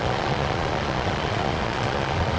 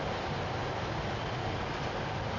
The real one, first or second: second